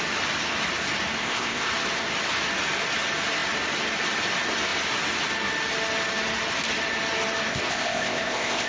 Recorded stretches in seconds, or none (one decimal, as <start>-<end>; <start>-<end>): 0.0-1.2; 1.7-7.5